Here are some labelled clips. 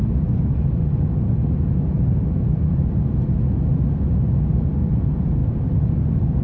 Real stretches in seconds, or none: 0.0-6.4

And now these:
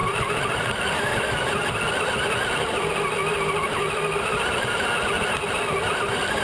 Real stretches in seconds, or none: 0.0-6.4

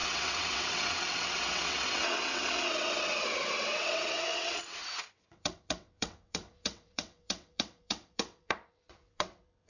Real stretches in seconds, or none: none

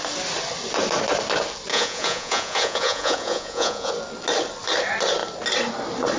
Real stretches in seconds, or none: 0.0-1.7; 3.9-6.2

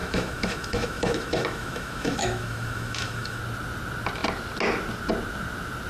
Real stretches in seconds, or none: 3.4-5.9

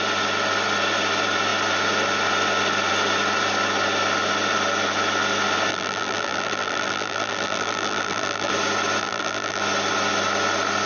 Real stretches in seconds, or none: 0.0-5.7; 8.5-9.0; 9.6-10.9